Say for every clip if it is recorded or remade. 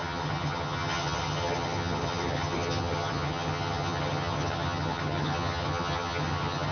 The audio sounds remade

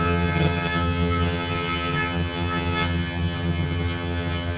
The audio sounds remade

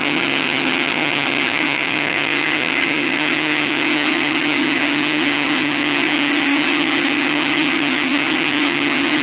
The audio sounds remade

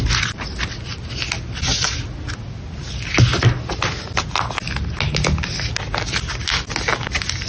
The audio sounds recorded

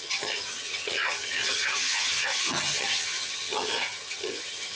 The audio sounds remade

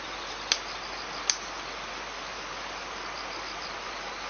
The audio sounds recorded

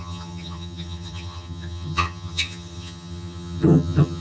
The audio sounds remade